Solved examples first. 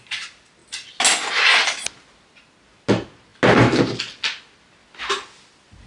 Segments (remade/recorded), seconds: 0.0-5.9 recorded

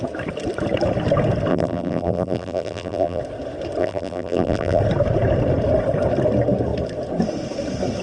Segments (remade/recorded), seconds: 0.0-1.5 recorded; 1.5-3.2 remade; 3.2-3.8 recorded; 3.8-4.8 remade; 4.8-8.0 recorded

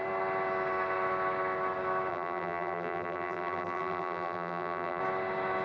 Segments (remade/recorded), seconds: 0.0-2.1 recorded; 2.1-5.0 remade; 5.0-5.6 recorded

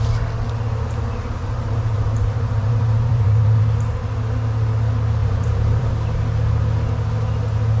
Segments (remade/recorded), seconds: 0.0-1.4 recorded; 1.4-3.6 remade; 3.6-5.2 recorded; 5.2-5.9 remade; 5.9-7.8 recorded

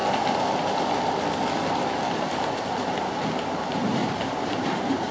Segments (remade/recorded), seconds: 0.0-4.0 recorded; 4.0-5.1 remade